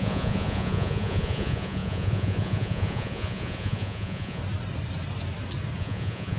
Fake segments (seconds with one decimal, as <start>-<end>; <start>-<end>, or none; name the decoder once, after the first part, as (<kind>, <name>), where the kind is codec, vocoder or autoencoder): 0.0-4.4 (vocoder, Vocos); 5.8-6.4

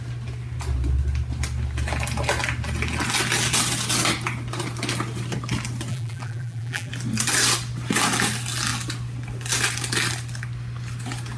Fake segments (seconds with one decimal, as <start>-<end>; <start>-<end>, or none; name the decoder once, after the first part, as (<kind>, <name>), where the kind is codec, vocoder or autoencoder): 5.9-6.9 (vocoder, BigVGAN v2)

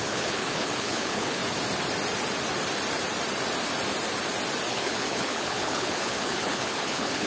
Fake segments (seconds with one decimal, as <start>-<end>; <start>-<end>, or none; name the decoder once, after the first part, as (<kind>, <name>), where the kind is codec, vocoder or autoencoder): 0.0-1.4 (codec, HILCodec); 4.7-7.3

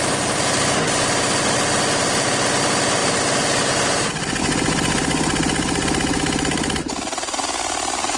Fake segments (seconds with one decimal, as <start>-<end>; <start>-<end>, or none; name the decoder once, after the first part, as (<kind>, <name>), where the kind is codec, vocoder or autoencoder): none

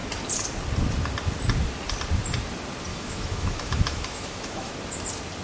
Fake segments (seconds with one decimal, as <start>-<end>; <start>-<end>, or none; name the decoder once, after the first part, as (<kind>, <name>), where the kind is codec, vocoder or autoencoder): 2.9-4.7 (autoencoder, DAC-VAE)

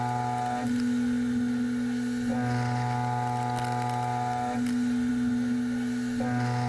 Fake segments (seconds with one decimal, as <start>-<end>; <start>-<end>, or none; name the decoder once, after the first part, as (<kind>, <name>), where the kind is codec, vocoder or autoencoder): none